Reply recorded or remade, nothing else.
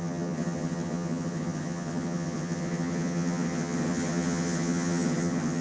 remade